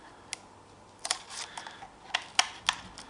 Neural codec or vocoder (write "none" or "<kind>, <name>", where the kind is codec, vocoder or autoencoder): none